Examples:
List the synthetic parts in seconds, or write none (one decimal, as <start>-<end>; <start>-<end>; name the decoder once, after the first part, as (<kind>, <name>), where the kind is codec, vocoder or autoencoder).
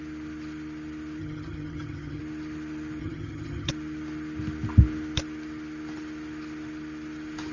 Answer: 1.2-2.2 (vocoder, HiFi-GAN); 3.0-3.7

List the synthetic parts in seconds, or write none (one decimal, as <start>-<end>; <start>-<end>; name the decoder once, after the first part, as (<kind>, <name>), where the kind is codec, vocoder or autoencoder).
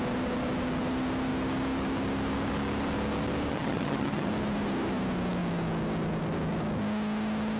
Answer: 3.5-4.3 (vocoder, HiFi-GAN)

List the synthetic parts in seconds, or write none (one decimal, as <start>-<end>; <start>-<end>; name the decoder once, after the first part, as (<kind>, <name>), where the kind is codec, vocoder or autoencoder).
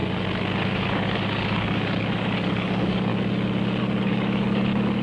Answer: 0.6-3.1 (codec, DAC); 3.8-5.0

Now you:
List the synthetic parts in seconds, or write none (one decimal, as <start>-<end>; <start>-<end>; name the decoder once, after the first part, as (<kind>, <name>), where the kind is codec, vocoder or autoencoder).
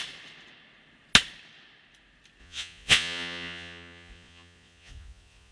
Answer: 2.4-5.5 (vocoder, Vocos)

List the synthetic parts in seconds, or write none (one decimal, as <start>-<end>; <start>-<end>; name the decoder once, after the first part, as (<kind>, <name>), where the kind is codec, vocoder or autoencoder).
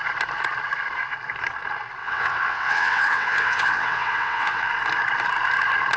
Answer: 2.0-4.7 (vocoder, WaveNeXt)